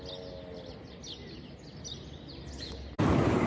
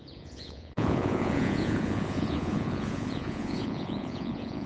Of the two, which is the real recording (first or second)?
first